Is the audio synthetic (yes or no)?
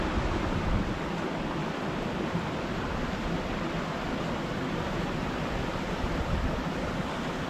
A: no